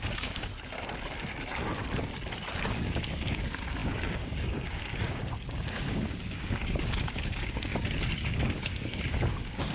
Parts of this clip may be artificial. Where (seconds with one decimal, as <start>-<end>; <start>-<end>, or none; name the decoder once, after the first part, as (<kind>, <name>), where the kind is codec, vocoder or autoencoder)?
0.0-0.5 (codec, DAC); 2.7-7.7; 8.2-9.7